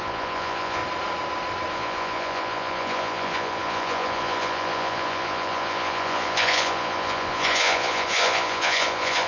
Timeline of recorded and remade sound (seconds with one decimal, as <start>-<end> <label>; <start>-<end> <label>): 0.0-0.8 remade; 0.8-1.7 recorded; 1.7-9.3 remade